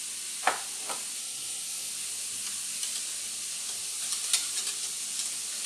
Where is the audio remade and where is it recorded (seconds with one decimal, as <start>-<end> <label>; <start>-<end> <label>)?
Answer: 0.0-1.2 recorded; 1.2-1.9 remade; 1.9-5.7 recorded